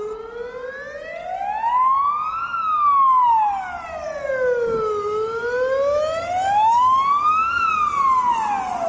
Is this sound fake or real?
real